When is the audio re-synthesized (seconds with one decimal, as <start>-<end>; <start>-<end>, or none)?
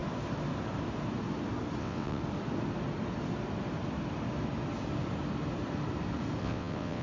1.8-2.2; 6.4-7.0